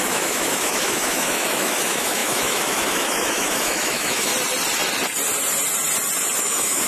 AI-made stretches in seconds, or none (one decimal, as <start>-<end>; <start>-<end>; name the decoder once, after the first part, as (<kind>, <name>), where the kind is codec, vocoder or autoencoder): 0.0-4.3 (autoencoder, DAC-VAE); 6.4-6.9